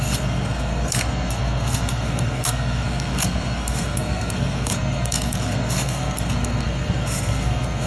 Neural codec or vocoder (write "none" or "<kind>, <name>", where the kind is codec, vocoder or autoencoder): codec, SNAC